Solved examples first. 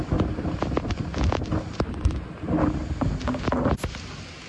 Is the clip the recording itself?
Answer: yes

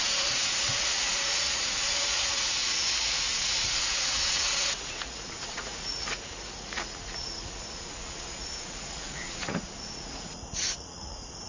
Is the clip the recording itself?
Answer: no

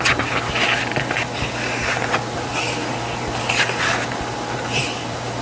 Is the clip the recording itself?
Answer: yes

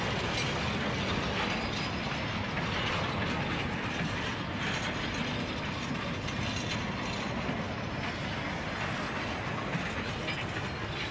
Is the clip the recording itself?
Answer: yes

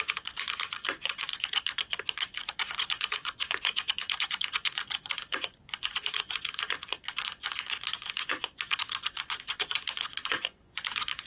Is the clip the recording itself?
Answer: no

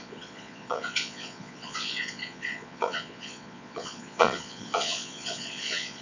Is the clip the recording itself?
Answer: no